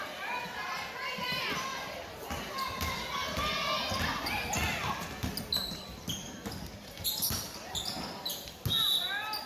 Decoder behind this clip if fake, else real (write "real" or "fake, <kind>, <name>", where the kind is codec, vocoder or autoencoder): real